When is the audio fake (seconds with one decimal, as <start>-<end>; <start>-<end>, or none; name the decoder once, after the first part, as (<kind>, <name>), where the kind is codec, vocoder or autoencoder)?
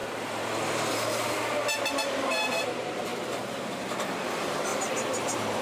0.9-5.6 (vocoder, BigVGAN v2)